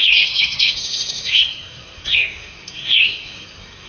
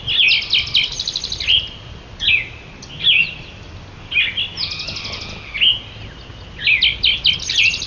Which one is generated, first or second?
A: first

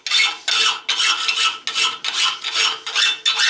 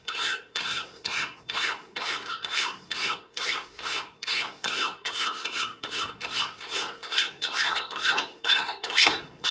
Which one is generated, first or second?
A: second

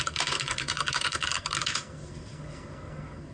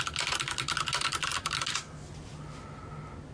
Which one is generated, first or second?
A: first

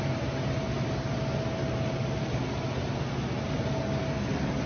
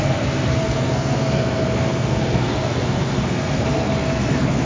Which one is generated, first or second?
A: second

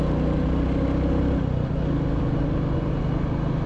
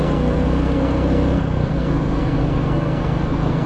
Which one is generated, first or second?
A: second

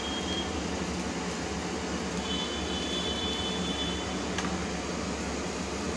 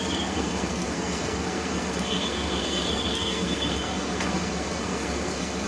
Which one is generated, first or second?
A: second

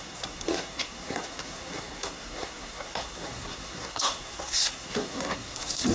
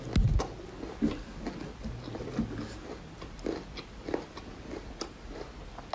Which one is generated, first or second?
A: first